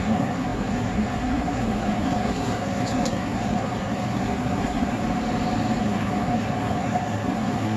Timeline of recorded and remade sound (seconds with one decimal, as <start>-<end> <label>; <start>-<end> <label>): 0.0-5.0 remade; 5.0-5.8 recorded; 5.8-7.8 remade